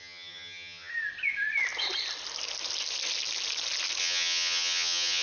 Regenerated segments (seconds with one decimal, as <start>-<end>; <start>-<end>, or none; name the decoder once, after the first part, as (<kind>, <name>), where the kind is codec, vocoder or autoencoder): 0.0-0.9 (vocoder, HiFi-GAN); 4.0-5.2